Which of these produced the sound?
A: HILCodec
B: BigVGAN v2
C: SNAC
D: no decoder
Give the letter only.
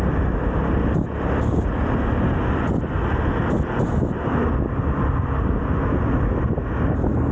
D